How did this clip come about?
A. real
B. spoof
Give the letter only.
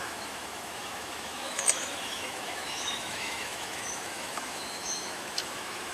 B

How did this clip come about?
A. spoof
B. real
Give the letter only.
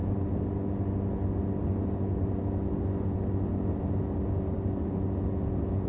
B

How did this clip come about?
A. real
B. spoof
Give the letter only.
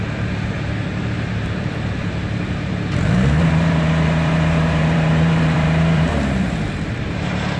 B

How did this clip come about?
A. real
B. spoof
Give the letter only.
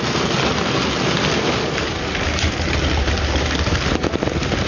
A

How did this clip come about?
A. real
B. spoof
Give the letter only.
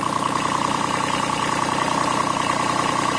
A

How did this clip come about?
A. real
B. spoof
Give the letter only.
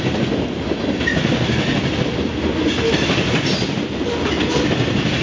A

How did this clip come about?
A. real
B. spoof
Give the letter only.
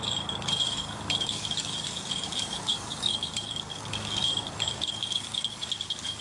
B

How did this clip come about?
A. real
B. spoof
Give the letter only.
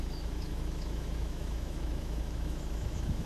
B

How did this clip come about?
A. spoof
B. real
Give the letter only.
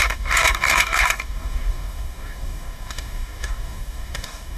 A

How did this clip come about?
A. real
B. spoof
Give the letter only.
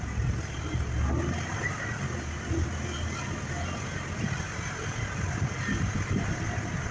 A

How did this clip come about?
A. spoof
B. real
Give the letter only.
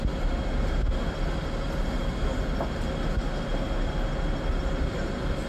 B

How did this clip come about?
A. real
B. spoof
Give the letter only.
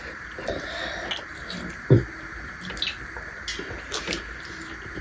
A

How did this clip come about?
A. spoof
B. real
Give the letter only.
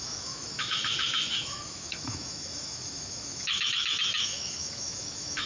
A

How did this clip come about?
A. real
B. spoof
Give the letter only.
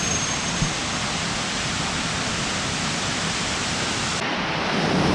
A